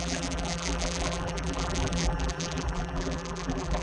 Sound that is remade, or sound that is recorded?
remade